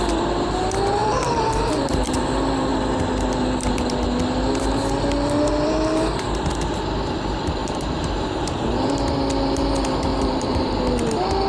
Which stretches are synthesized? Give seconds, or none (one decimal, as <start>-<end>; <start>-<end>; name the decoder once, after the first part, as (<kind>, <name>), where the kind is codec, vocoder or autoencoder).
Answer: 1.0-2.2 (vocoder, BigVGAN v2); 7.6-8.9; 10.1-10.8